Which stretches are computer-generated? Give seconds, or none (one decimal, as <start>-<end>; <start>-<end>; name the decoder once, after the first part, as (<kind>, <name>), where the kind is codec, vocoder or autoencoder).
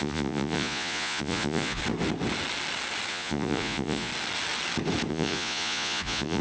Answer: 0.0-1.8 (vocoder, Vocos); 3.1-4.1; 5.1-6.4